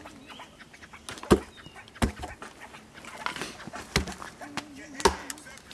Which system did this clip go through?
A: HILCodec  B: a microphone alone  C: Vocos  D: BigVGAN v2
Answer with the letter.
B